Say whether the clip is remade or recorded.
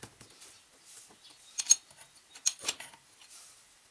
recorded